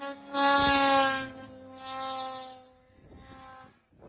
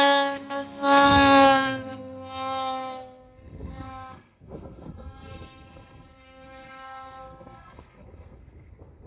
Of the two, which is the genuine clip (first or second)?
first